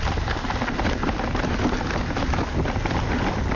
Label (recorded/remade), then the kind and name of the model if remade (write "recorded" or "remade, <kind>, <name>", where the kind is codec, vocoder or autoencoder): recorded